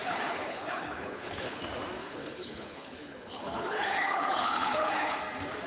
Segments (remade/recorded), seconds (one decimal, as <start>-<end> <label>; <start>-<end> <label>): 0.0-1.6 remade; 1.6-2.0 recorded; 2.0-5.2 remade; 5.2-5.7 recorded